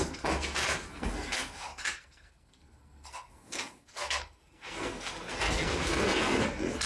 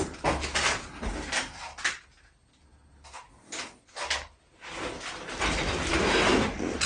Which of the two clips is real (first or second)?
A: second